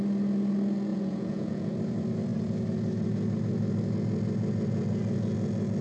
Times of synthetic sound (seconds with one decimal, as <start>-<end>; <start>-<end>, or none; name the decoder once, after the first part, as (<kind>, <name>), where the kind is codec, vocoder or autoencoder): 0.9-1.7 (vocoder, Vocos)